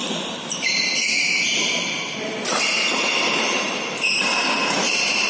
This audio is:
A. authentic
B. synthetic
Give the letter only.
A